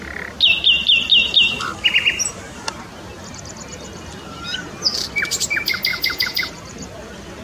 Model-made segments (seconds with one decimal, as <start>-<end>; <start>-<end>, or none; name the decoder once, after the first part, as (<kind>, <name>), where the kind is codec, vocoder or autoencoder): 5.9-6.5 (vocoder, Vocos)